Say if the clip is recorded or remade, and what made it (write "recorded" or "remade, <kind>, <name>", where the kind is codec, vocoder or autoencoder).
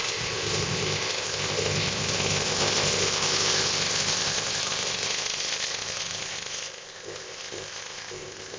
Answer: remade, codec, ZipCodec